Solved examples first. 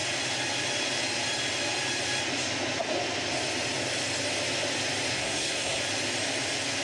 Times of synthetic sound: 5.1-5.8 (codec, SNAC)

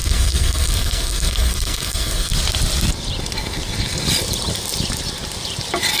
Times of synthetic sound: 0.0-2.3 (codec, SNAC)

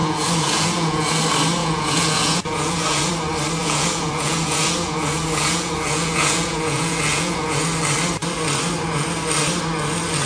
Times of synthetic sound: 0.0-1.2 (vocoder, Vocos); 1.6-3.1; 3.6-7.6

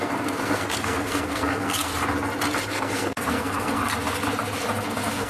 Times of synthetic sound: 0.0-1.9 (codec, SNAC); 2.7-3.8; 4.8-5.3

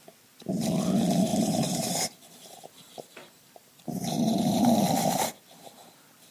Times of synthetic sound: 1.3-4.6 (vocoder, BigVGAN v2)

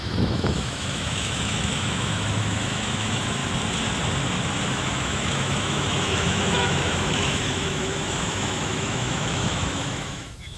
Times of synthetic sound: 0.0-3.4 (autoencoder, DAC-VAE); 4.7-10.6

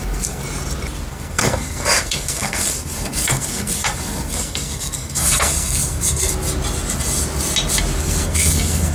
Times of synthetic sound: 0.0-0.4 (codec, SNAC); 1.1-6.3; 8.0-8.9

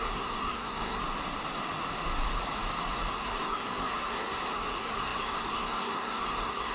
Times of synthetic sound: 0.0-1.0 (codec, SNAC); 3.1-6.7